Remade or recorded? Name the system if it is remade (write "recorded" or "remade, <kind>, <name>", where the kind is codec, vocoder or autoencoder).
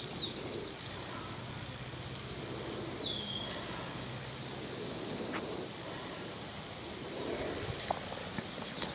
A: recorded